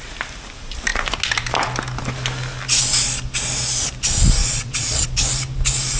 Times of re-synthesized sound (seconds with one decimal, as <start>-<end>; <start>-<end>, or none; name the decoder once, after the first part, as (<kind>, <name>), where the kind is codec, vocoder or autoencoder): 4.4-5.1 (vocoder, Vocos)